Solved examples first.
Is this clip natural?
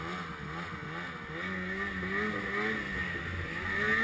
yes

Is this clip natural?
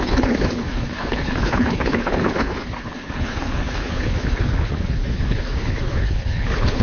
no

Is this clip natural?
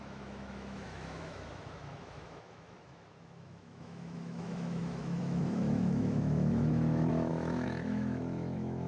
no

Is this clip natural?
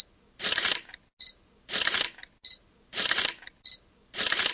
yes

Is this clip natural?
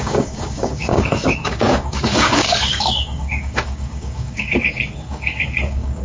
no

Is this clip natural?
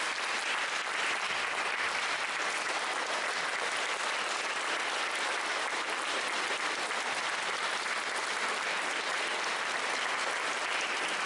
yes